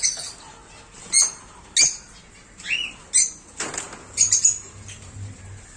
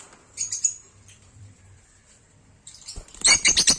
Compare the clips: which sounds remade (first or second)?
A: second